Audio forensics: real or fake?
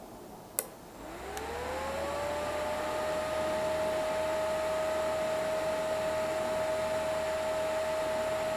real